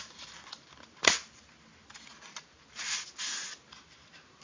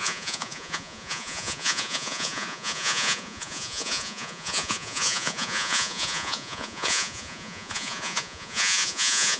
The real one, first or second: first